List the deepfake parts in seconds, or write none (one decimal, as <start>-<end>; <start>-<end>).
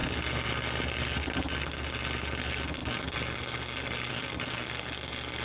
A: none